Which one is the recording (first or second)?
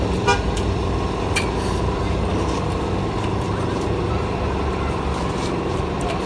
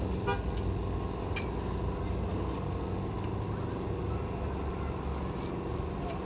second